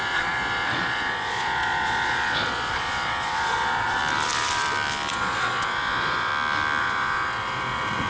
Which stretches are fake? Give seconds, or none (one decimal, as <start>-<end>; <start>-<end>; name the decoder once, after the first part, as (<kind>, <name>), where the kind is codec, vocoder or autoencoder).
0.0-4.0 (vocoder, Vocos); 5.1-6.3; 6.8-8.1